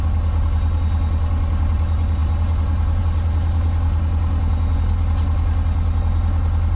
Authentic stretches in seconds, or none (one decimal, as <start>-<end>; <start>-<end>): 0.0-6.8